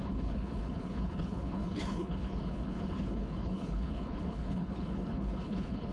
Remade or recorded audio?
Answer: remade